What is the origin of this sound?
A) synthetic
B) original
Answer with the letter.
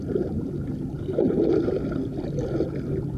B